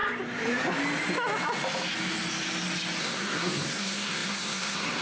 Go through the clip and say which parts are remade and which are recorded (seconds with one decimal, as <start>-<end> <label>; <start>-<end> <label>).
0.0-3.0 recorded; 3.0-5.0 remade